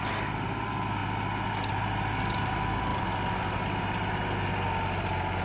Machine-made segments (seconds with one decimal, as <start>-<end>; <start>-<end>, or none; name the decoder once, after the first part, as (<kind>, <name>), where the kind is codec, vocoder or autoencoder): none